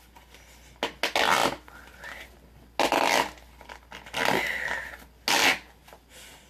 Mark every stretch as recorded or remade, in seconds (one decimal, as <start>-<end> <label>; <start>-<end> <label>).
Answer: 0.0-6.5 recorded